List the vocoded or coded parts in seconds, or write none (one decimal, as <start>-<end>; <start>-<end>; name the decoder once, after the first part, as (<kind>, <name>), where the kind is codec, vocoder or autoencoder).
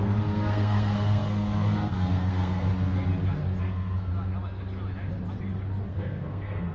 0.0-2.7 (codec, SNAC); 3.6-4.1; 5.9-6.7